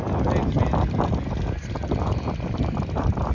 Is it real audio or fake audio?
real